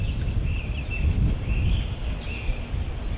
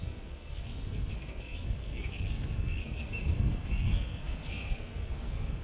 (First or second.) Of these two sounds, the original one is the first